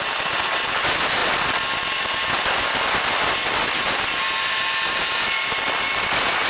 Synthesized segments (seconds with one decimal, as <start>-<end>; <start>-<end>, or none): none